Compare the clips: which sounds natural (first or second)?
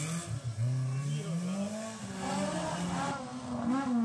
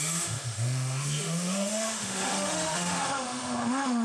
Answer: first